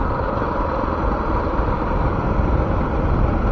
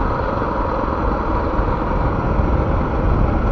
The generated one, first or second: first